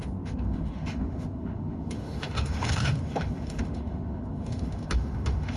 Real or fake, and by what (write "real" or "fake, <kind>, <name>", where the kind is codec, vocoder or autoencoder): fake, autoencoder, DAC-VAE